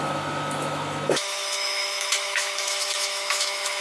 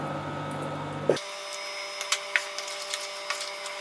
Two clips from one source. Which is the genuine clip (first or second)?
second